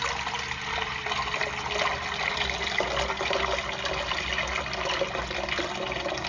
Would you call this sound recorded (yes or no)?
yes